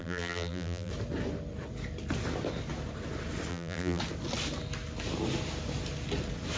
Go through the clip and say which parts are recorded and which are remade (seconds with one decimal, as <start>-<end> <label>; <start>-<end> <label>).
0.0-0.9 remade; 0.9-3.5 recorded; 3.5-4.0 remade; 4.0-6.6 recorded

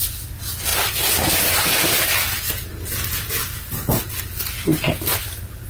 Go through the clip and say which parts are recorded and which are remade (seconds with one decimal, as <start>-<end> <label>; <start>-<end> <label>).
0.0-5.7 recorded

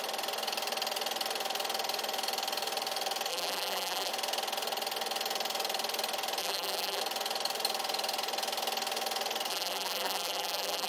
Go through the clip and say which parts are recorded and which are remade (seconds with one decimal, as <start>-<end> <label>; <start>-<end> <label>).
0.0-3.3 recorded; 3.3-4.1 remade; 4.1-6.4 recorded; 6.4-7.0 remade; 7.0-9.5 recorded; 9.5-10.9 remade

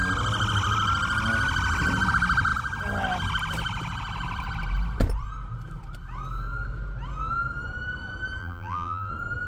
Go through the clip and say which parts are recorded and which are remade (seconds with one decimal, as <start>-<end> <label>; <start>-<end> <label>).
0.0-8.4 recorded; 8.4-9.1 remade; 9.1-9.5 recorded